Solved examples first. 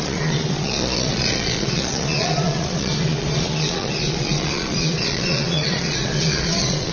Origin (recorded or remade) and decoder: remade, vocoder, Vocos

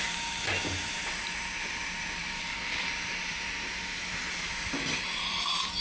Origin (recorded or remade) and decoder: recorded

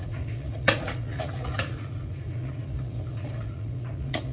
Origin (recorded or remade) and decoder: remade, vocoder, Vocos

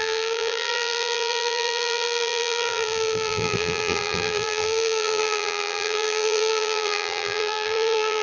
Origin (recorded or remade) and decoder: remade, vocoder, BigVGAN v2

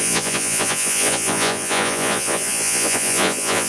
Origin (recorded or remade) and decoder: remade, vocoder, Vocos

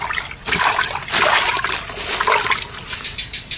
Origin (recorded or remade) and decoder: recorded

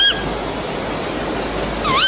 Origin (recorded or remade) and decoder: recorded